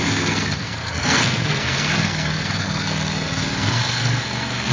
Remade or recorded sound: remade